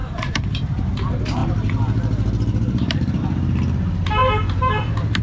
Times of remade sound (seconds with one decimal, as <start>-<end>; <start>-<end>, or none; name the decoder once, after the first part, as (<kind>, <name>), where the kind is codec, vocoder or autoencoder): 0.0-0.9 (vocoder, BigVGAN v2); 1.4-3.2